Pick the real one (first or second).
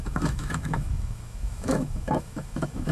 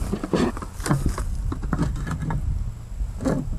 second